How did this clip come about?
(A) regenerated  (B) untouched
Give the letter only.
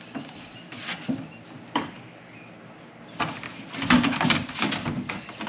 B